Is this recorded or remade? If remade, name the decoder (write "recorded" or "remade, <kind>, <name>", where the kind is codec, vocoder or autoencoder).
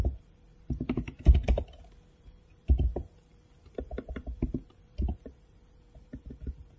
remade, vocoder, BigVGAN v2